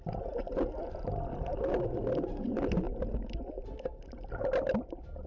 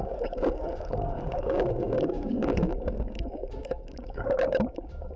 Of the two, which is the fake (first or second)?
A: second